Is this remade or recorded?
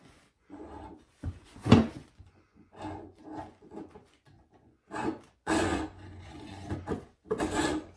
remade